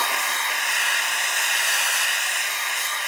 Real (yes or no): yes